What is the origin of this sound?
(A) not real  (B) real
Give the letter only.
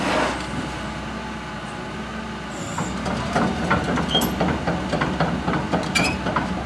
B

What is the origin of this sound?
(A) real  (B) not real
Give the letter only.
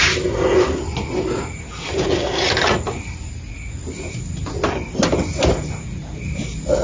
A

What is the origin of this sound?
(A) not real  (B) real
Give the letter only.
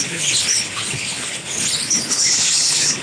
A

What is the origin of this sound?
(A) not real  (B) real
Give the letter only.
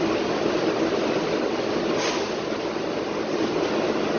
B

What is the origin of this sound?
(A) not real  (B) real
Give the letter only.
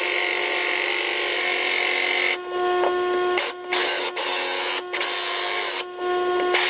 B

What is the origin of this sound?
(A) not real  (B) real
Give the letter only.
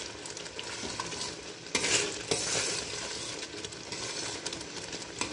B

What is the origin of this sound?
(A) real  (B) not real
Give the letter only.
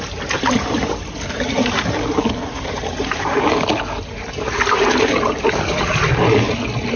A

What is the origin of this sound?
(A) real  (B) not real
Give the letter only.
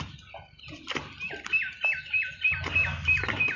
A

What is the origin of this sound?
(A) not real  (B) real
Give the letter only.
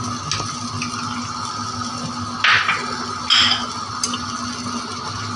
B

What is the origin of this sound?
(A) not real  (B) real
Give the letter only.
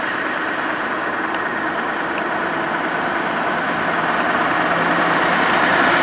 B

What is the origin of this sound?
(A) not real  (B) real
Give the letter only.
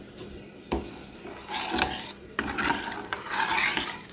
B